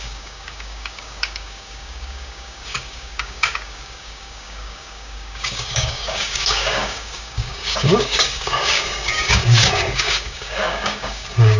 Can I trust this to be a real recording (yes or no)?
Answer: no